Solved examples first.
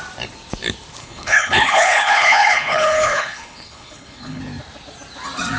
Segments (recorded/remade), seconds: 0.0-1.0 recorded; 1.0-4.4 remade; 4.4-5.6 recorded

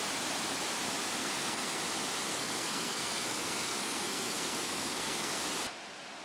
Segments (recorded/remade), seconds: 0.0-1.2 recorded; 1.2-1.8 remade; 1.8-2.3 recorded; 2.3-5.4 remade; 5.4-6.2 recorded

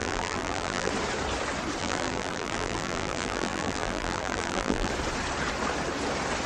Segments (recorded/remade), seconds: 0.0-0.9 remade; 0.9-1.8 recorded; 1.8-4.9 remade; 4.9-6.5 recorded

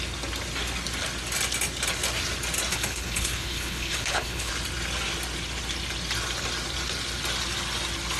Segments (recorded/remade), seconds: 0.0-2.7 recorded; 2.7-4.5 remade; 4.5-8.2 recorded

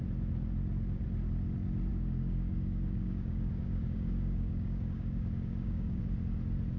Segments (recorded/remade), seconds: 0.0-1.9 recorded; 1.9-6.0 remade; 6.0-6.8 recorded